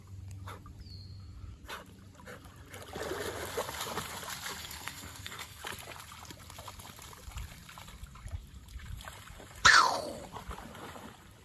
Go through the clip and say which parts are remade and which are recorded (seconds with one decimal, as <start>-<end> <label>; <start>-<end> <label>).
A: 0.0-4.6 recorded; 4.6-5.6 remade; 5.6-11.4 recorded